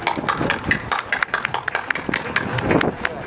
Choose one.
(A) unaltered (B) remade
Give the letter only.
A